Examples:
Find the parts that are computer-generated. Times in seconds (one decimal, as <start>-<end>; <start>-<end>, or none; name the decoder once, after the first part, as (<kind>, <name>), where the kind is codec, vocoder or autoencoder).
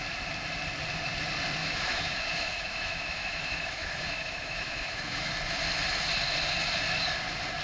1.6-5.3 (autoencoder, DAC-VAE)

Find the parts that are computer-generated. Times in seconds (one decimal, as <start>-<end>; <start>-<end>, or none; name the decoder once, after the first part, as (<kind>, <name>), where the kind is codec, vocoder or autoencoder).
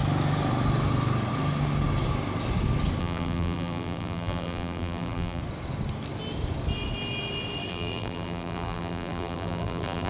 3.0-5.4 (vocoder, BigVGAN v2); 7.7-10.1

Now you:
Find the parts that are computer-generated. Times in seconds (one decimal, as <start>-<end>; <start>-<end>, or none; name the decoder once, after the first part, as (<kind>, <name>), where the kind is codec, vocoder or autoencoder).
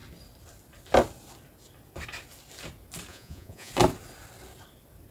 3.1-3.7 (vocoder, Vocos)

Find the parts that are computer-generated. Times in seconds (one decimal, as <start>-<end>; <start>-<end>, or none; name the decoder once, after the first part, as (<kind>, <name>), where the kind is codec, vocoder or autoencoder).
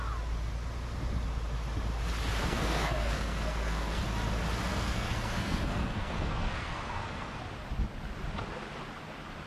2.4-4.0 (codec, SNAC); 4.7-7.4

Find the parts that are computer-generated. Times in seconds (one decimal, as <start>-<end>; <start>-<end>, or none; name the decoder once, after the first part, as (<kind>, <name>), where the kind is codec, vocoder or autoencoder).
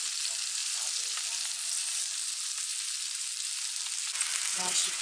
4.5-5.0 (vocoder, WaveNeXt)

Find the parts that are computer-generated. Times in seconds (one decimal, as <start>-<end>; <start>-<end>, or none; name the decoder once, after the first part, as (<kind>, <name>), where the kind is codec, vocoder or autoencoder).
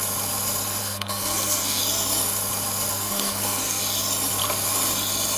0.8-1.8 (codec, SNAC); 2.9-3.8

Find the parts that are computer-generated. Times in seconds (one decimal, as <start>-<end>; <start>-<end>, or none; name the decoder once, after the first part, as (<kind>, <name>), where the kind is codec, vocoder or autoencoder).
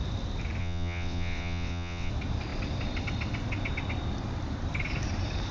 0.6-2.1 (vocoder, WaveNeXt)